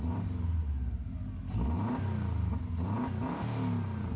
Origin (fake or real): real